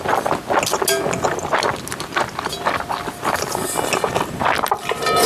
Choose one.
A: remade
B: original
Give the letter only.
B